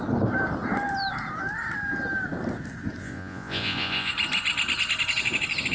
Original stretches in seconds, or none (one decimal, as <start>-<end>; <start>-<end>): 0.0-3.0; 4.1-5.7